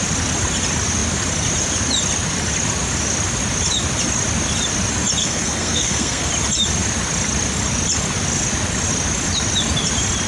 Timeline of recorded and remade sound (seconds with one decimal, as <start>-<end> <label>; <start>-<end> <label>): 0.0-5.2 recorded; 5.2-6.3 remade; 6.3-10.3 recorded